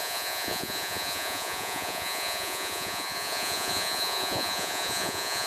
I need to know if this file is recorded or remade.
remade